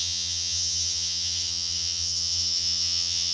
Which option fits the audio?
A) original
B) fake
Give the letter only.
B